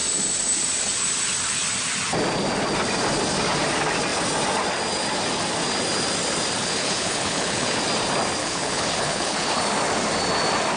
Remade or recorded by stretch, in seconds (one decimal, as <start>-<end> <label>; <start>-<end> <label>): 0.0-6.6 recorded; 6.6-7.8 remade; 7.8-8.4 recorded; 8.4-9.6 remade; 9.6-10.8 recorded